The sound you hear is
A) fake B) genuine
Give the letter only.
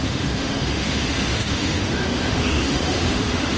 A